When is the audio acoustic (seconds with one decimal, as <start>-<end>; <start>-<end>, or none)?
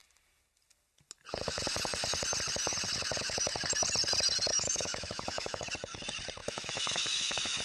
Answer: 0.0-4.5; 5.6-6.4